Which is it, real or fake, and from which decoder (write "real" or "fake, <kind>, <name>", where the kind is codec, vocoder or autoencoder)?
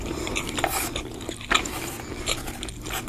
fake, vocoder, BigVGAN v2